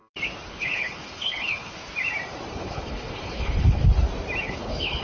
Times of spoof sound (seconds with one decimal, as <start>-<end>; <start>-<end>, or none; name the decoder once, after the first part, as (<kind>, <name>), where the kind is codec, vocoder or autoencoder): 0.5-1.8 (codec, HILCodec); 2.5-3.8; 4.4-5.0